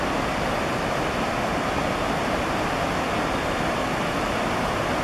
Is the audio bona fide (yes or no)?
yes